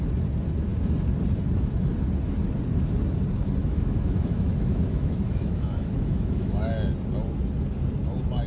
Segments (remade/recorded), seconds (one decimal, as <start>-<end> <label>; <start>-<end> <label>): 0.0-3.6 recorded; 3.6-6.7 remade; 6.7-8.5 recorded